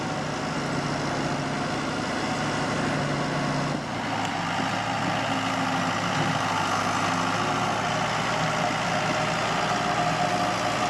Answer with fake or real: real